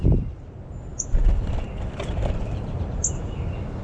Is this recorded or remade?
recorded